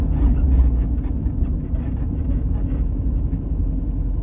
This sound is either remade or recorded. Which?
recorded